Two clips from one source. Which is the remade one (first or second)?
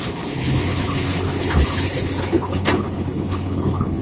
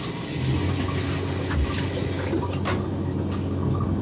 first